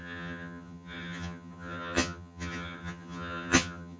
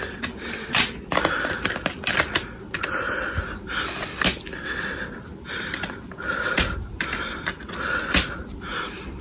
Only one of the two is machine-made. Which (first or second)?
first